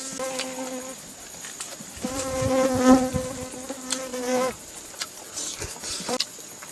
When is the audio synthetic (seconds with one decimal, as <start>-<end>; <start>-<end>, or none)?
0.9-2.5; 4.1-4.7